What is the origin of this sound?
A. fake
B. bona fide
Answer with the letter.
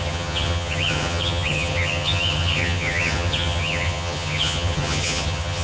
A